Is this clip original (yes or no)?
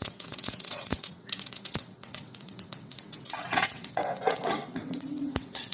no